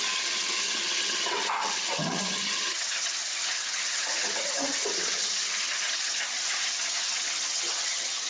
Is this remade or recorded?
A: remade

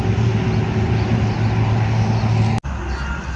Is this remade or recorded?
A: recorded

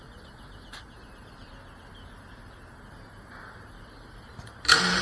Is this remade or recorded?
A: recorded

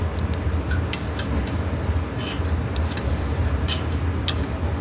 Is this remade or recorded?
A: recorded